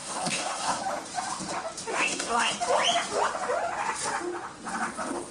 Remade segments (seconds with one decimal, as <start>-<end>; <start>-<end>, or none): 0.0-0.8; 1.9-2.5